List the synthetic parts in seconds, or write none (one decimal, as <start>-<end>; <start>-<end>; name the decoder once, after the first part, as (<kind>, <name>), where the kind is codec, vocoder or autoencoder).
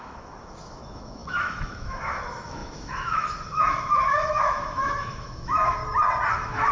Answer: 0.0-5.8 (autoencoder, DAC-VAE); 6.3-6.7